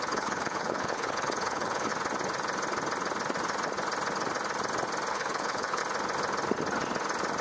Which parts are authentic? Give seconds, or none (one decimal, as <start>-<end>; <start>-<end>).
1.9-5.1; 5.8-7.4